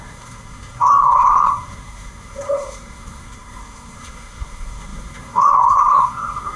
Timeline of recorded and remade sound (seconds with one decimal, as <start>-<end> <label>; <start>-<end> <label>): 0.0-6.6 remade